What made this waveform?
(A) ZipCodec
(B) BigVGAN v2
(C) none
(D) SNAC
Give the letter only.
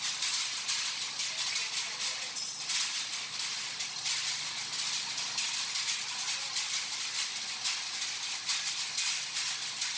C